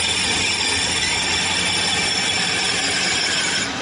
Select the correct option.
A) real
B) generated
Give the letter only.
A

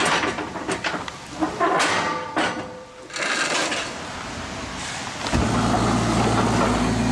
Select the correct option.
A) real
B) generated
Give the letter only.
A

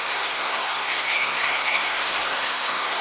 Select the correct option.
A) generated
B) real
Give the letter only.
A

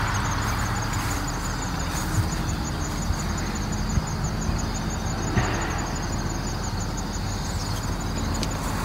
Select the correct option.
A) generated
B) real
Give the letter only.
B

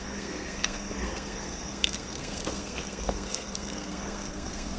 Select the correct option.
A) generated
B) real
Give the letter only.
A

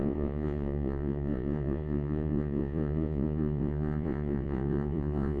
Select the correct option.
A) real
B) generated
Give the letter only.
B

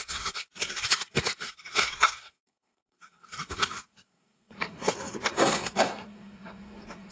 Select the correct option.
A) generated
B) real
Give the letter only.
A